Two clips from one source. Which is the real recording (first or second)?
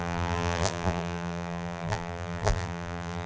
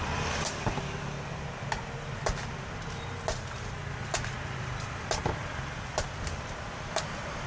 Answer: second